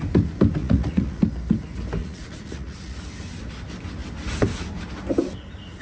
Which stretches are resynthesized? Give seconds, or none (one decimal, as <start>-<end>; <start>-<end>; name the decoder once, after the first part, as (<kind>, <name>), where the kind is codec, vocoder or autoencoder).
0.6-1.2 (vocoder, Vocos); 2.0-3.0